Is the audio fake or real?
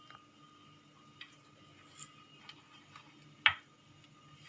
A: real